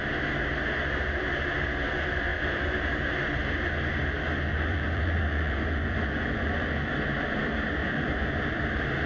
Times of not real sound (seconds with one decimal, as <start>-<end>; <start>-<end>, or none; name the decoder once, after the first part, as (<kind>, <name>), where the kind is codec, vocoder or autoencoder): 4.5-6.9 (vocoder, Vocos); 7.8-8.6